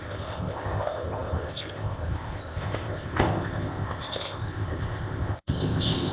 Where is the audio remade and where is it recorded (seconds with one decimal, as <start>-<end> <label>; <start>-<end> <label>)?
0.0-6.1 remade